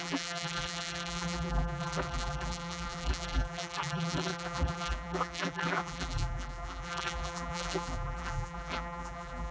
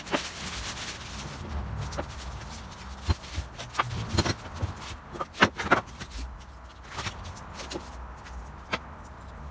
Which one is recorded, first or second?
second